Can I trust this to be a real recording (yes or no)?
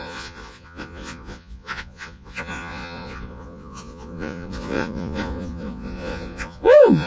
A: no